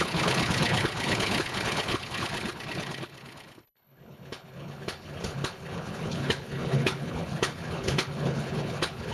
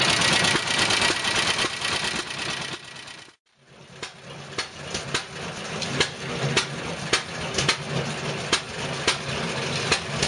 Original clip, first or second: second